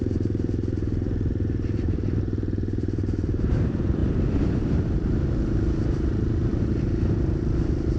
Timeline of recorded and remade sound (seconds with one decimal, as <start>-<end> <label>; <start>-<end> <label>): 0.0-8.0 recorded